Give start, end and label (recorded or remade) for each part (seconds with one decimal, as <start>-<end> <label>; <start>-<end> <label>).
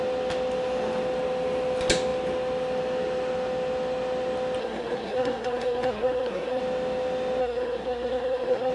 0.0-4.6 recorded; 4.6-6.6 remade; 6.6-7.4 recorded; 7.4-8.7 remade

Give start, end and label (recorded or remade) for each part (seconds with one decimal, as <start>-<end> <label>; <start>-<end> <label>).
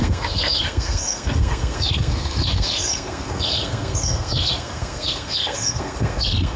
0.0-6.6 remade